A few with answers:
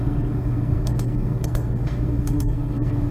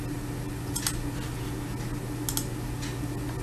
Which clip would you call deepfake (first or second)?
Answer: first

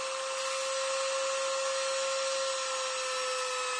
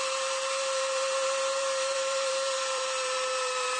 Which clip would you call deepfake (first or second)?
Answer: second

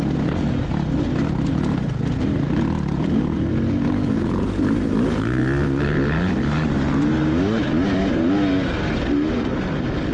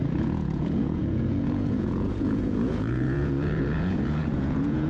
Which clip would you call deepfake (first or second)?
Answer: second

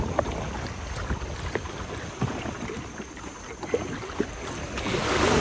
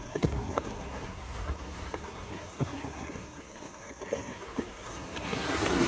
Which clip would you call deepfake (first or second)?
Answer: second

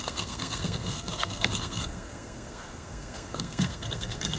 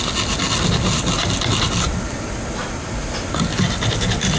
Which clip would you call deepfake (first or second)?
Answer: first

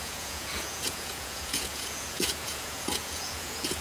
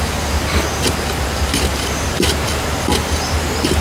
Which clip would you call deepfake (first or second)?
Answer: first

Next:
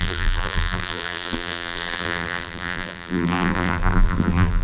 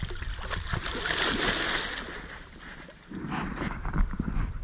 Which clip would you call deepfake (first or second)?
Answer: first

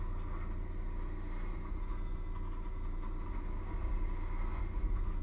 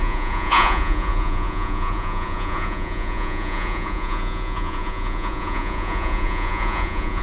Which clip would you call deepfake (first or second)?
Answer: second